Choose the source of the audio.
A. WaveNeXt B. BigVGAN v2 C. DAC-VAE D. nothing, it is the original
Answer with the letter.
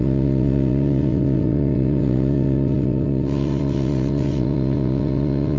A